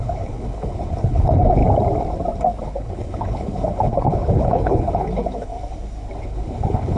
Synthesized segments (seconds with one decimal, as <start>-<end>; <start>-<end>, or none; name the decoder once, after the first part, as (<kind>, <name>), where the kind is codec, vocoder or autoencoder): 0.0-1.6 (codec, HILCodec); 2.6-5.5; 6.2-7.0